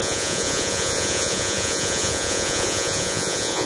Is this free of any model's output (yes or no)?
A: no